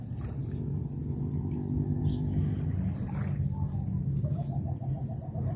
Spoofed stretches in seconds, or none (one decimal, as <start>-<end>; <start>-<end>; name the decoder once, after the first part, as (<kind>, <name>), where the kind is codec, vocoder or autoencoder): none